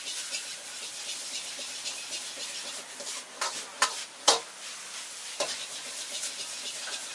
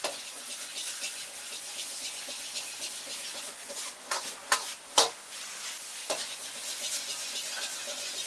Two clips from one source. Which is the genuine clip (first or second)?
first